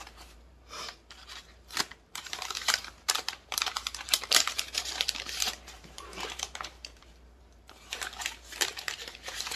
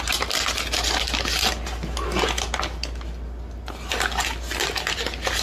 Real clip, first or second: second